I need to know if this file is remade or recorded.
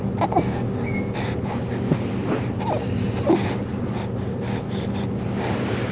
recorded